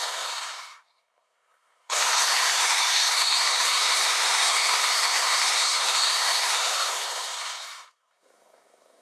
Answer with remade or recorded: remade